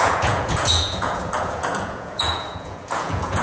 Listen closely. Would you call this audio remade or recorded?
remade